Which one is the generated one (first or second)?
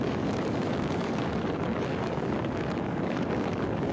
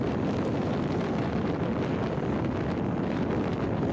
first